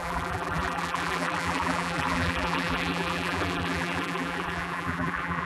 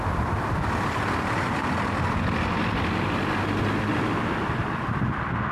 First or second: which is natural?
second